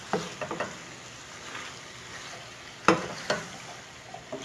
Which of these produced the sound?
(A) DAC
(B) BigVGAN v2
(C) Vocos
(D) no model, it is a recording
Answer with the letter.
D